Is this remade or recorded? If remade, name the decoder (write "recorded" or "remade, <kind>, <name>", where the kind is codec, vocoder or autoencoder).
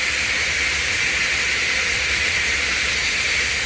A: remade, vocoder, BigVGAN v2